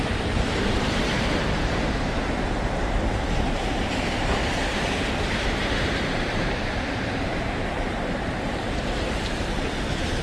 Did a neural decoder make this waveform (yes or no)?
yes